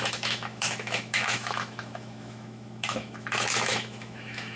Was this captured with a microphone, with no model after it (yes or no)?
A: no